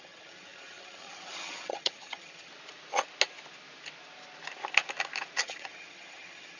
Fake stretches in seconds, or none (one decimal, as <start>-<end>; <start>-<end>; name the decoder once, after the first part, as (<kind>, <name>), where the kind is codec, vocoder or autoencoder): 0.0-2.5 (vocoder, HiFi-GAN); 5.4-6.6